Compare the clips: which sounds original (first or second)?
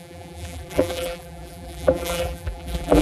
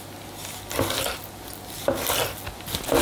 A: second